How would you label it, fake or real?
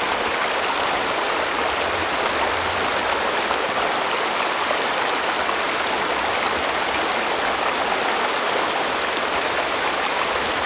real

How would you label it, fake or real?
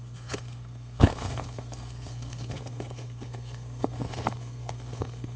fake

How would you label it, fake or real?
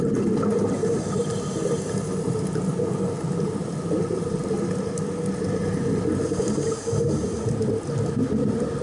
real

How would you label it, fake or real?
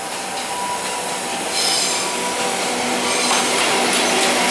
real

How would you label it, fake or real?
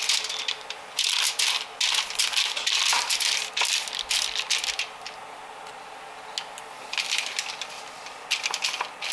real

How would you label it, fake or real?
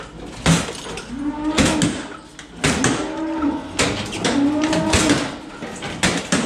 real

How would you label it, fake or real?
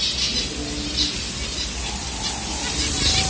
real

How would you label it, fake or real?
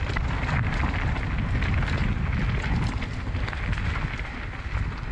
real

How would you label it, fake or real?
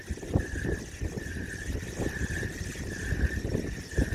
real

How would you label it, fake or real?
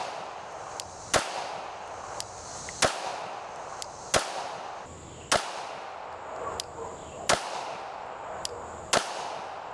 real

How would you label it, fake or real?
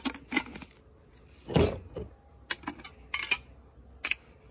real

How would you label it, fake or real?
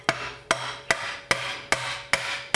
real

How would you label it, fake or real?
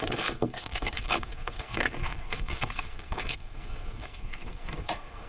fake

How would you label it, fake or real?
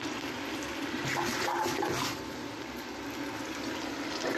real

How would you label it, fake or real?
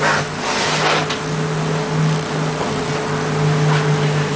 real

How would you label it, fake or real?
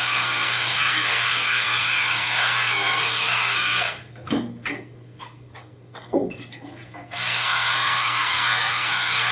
fake